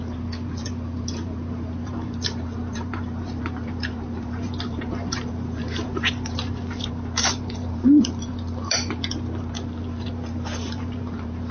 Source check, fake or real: fake